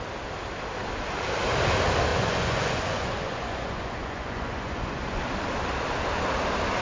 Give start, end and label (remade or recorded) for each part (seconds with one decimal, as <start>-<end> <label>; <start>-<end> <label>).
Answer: 0.0-2.1 recorded; 2.1-5.2 remade; 5.2-6.8 recorded